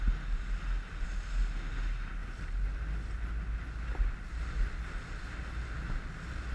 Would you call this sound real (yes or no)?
yes